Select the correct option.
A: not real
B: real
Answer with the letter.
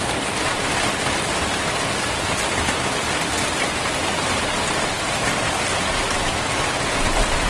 B